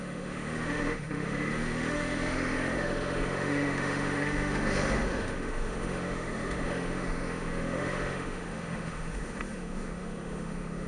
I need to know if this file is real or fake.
fake